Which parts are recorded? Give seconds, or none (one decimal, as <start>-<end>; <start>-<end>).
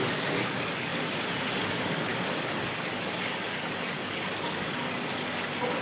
0.9-1.5; 2.1-2.6